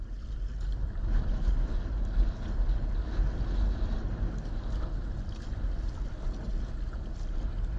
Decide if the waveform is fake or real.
real